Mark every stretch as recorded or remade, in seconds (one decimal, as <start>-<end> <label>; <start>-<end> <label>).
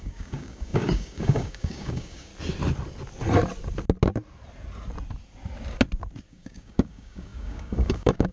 0.0-2.3 remade; 2.3-6.3 recorded; 6.3-8.3 remade